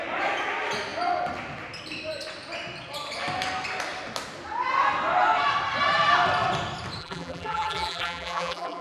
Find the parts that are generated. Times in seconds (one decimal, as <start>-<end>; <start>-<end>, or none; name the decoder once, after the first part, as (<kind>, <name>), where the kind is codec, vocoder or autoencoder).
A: 7.0-8.8 (vocoder, BigVGAN v2)